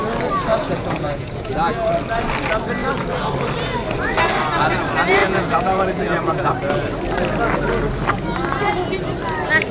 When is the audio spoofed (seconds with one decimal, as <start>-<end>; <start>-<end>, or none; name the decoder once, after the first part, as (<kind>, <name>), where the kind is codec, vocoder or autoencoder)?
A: 0.5-1.9 (vocoder, Vocos); 5.2-6.5